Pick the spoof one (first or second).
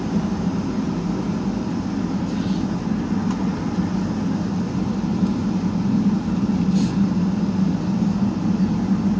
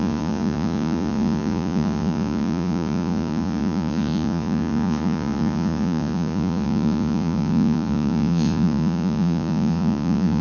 second